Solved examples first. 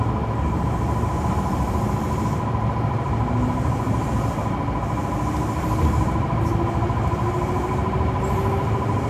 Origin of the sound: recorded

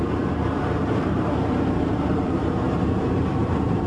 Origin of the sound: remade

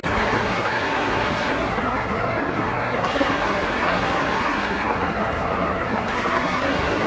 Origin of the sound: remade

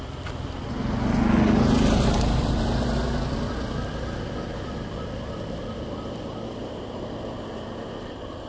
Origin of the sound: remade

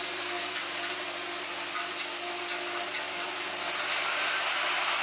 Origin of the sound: recorded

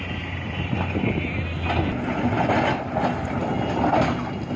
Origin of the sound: recorded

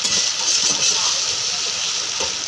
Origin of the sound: recorded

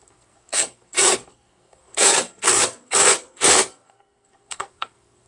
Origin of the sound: remade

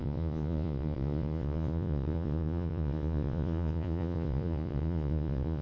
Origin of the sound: remade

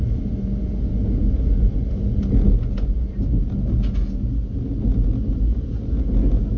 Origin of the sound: recorded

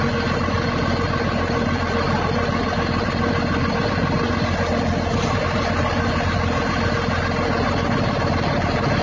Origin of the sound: recorded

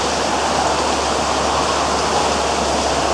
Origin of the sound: recorded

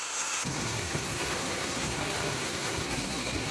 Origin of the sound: remade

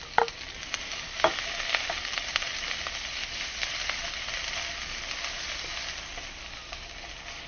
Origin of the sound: recorded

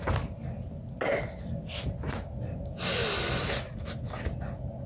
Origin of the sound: recorded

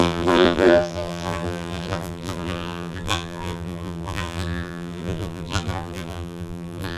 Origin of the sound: remade